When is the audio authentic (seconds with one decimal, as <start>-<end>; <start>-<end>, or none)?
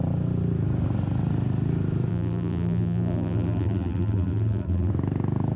0.0-2.1; 4.9-5.6